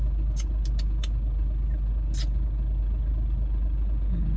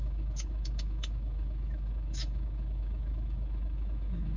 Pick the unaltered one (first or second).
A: first